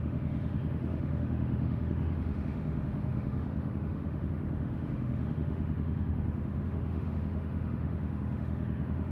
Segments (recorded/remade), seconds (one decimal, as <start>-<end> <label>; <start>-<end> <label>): 0.0-9.1 remade